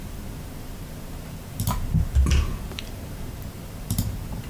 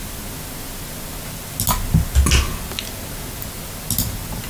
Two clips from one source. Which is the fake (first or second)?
first